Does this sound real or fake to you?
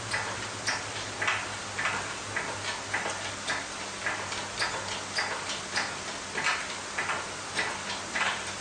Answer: real